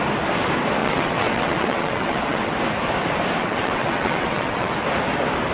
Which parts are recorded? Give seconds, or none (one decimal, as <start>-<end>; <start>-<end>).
0.0-0.8; 2.5-3.4; 4.7-5.5